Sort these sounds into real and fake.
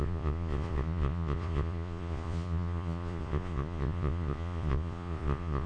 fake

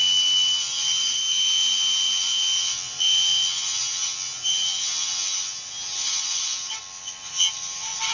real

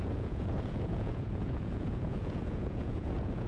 fake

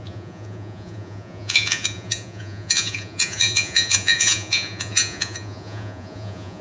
fake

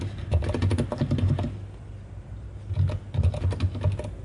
real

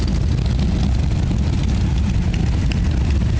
real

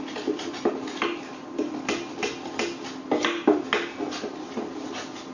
real